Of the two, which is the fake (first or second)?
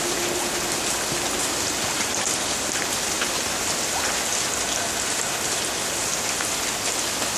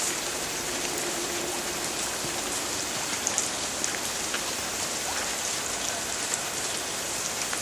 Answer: second